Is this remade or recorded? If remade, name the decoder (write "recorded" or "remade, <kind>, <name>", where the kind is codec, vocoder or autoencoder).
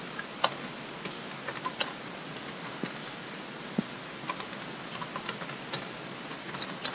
recorded